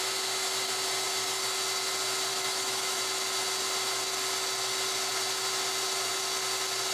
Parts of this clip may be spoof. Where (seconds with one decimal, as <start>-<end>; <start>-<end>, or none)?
2.3-3.0